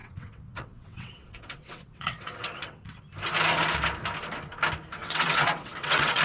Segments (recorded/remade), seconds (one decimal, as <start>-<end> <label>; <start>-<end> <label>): 0.0-3.0 remade; 3.0-5.0 recorded; 5.0-6.2 remade